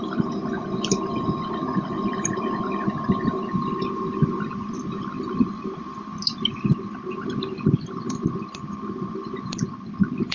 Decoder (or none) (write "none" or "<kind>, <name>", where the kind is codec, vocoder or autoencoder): none